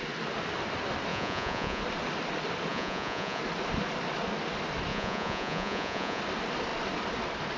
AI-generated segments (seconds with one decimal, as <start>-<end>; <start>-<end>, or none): 1.1-1.8; 2.7-3.4; 4.9-6.2